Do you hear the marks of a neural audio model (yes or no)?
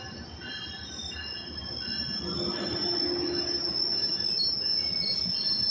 no